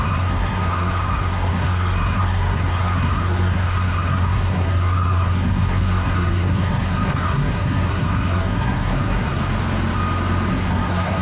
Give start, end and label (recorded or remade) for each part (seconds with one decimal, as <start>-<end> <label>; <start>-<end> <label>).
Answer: 0.0-9.4 remade; 9.4-10.5 recorded; 10.5-11.2 remade